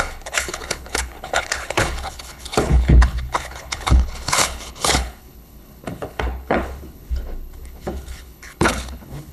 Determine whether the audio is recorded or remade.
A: remade